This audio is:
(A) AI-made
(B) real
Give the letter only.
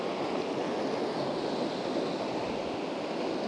B